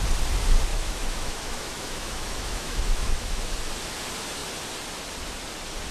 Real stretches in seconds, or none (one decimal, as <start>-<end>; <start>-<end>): 0.0-0.7; 3.5-5.9